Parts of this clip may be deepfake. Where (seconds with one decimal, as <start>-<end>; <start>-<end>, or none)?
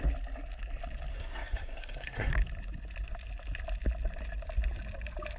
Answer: 1.1-2.3